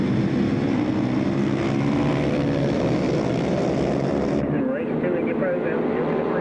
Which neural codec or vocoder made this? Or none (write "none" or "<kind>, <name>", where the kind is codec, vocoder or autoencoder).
none